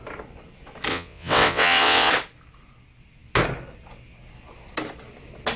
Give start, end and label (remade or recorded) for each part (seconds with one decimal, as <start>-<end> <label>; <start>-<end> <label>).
0.0-0.9 recorded; 0.9-2.1 remade; 2.1-5.6 recorded